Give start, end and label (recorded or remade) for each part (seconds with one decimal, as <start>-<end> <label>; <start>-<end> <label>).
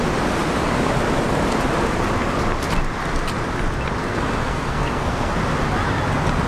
0.0-4.0 recorded; 4.0-5.3 remade; 5.3-6.5 recorded